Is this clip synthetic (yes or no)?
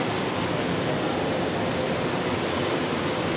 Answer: no